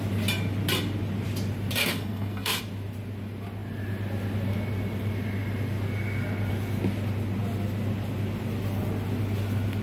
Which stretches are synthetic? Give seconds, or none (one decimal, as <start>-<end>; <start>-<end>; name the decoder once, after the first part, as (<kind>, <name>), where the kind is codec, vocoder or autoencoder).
1.8-2.6 (codec, SNAC)